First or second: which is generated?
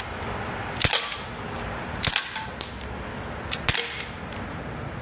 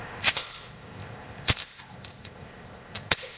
second